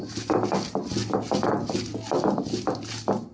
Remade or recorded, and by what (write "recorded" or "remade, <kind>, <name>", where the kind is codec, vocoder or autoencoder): recorded